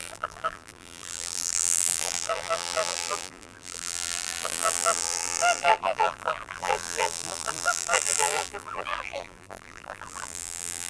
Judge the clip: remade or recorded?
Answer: remade